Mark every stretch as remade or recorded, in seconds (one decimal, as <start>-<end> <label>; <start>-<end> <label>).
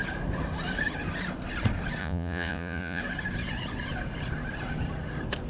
0.0-2.0 recorded; 2.0-3.0 remade; 3.0-5.5 recorded